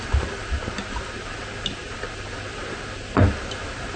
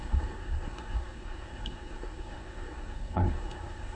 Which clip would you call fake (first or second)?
second